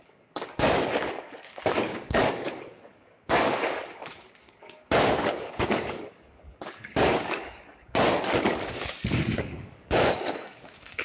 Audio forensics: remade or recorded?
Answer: remade